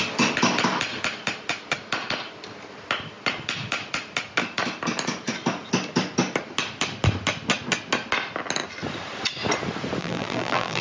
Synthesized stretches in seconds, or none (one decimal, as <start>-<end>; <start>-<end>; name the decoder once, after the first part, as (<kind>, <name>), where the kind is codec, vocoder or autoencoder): 10.0-10.8 (vocoder, BigVGAN v2)